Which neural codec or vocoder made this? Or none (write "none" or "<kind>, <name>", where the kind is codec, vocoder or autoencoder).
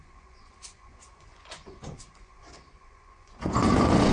vocoder, Vocos